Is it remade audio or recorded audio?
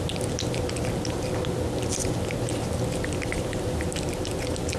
recorded